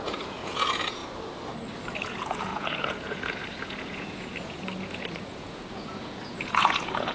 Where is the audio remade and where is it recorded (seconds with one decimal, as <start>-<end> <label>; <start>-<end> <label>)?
0.0-1.0 remade; 1.0-1.9 recorded; 1.9-7.1 remade